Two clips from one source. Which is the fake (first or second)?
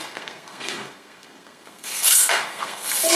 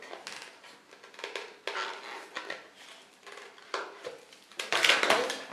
first